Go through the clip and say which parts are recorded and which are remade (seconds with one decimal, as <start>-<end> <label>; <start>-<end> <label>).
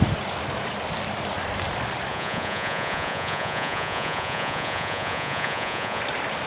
0.0-2.1 recorded; 2.1-6.0 remade; 6.0-6.5 recorded